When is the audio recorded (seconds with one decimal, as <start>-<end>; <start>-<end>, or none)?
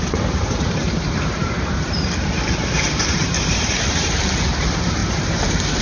none